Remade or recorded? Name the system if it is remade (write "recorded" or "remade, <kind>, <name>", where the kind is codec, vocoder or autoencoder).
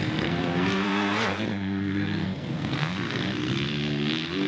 remade, codec, SNAC